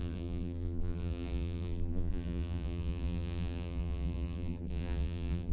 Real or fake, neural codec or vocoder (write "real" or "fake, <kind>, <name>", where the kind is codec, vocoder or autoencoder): fake, vocoder, BigVGAN v2